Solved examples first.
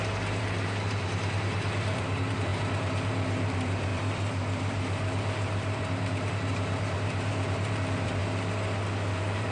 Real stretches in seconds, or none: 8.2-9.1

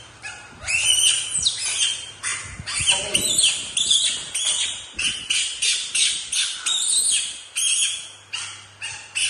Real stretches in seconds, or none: 0.0-9.3

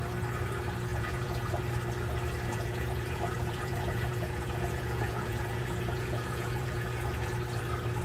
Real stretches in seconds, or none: 0.0-0.9; 1.6-2.5; 7.3-8.0

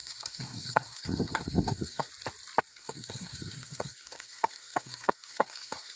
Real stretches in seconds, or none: 2.1-2.7

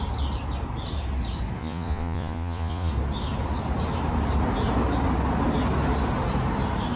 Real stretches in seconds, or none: 0.0-1.6; 2.9-7.0

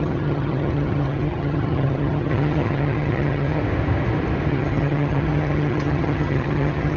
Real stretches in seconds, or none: 3.6-4.5

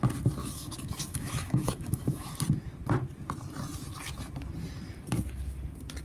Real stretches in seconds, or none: 0.0-0.4; 2.3-6.0

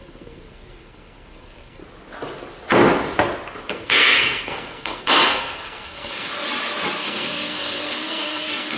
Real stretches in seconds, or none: 1.8-3.7; 6.3-7.0